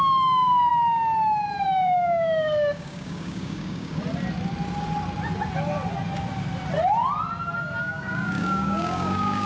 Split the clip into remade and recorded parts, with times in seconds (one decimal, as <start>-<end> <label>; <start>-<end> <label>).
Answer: 0.0-0.7 remade; 0.7-1.6 recorded; 1.6-4.0 remade; 4.0-7.8 recorded; 7.8-9.5 remade

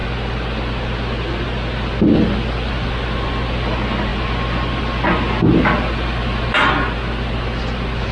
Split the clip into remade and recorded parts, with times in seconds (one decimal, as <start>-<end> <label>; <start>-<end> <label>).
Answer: 0.0-8.1 recorded

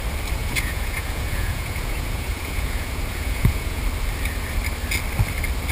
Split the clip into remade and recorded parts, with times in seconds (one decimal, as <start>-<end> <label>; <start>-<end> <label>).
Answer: 0.0-0.4 recorded; 0.4-3.8 remade; 3.8-5.7 recorded

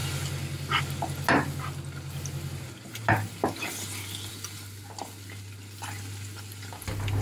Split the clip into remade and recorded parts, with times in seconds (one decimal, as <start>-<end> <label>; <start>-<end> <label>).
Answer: 0.0-7.2 recorded

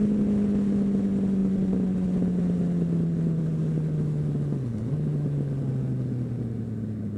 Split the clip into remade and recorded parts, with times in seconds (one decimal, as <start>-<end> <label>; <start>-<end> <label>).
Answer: 0.0-7.2 recorded

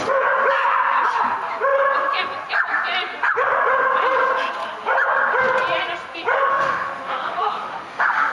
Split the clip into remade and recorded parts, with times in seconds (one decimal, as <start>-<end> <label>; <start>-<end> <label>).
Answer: 0.0-6.5 recorded; 6.5-8.3 remade

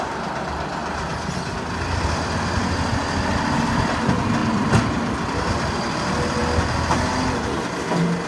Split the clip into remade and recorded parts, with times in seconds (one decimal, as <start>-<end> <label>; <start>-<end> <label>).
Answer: 0.0-8.3 recorded